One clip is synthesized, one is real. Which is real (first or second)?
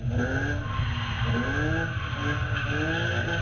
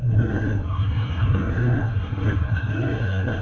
first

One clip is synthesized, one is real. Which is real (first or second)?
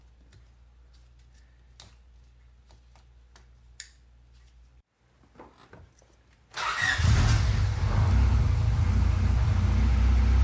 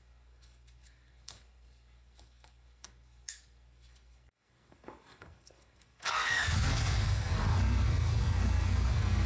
first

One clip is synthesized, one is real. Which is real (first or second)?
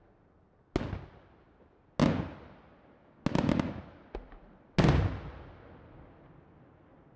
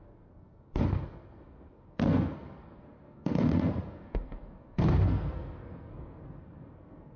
first